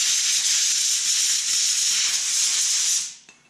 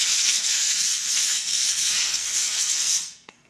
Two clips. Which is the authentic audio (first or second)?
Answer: first